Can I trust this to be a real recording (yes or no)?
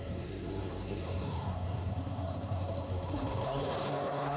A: no